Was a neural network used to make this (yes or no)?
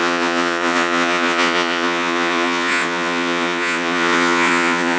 yes